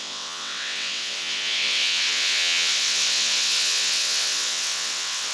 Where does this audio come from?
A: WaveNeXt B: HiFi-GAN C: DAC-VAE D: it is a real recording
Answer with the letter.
A